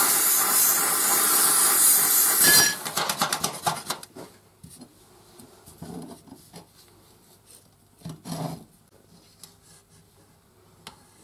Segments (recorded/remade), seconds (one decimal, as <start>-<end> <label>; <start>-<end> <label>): 0.0-11.2 recorded